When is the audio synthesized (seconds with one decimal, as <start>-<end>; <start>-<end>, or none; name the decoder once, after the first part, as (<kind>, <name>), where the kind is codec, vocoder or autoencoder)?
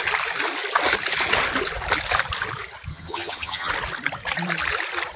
2.9-3.7 (vocoder, HiFi-GAN)